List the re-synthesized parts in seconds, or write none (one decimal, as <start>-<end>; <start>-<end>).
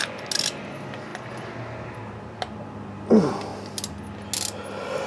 none